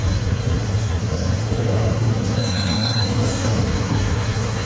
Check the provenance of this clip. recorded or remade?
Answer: remade